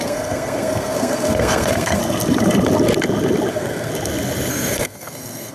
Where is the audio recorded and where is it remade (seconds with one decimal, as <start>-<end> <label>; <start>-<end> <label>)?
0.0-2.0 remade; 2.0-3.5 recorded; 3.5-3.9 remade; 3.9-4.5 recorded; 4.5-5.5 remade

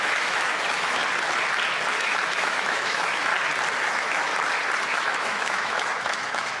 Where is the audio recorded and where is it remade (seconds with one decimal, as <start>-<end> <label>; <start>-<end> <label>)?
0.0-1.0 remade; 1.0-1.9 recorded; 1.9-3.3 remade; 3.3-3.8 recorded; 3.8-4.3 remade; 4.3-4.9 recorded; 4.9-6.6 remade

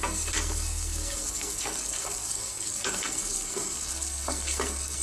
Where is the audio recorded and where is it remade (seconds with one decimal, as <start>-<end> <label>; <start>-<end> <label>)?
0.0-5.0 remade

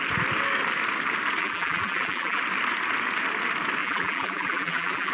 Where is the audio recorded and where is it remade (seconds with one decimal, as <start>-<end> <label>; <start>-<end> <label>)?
0.0-1.4 recorded; 1.4-2.4 remade; 2.4-3.8 recorded; 3.8-5.1 remade

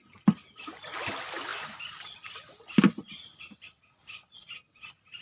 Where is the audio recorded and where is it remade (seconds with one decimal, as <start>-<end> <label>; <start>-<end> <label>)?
0.0-1.5 recorded; 1.5-4.6 remade; 4.6-5.2 recorded

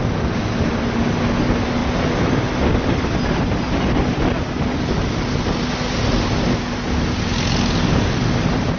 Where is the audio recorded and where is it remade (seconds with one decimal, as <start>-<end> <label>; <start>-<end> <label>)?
0.0-8.8 recorded